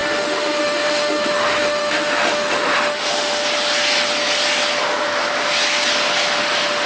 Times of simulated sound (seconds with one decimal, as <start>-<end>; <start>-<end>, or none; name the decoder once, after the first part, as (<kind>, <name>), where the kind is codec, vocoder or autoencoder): 0.0-3.4 (autoencoder, DAC-VAE); 6.4-6.9